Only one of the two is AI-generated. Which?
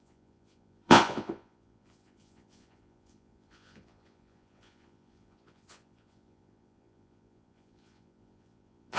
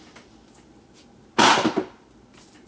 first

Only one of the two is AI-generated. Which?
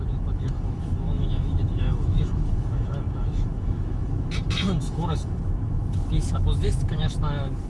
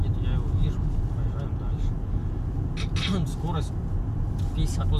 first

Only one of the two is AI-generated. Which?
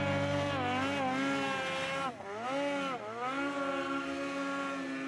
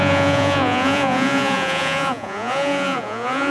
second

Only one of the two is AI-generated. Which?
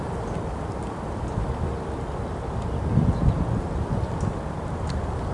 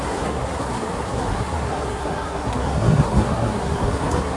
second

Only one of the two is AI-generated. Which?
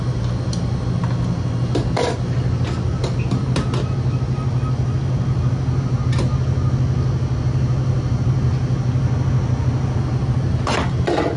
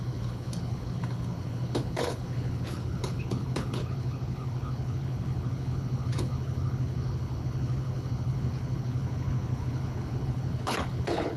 second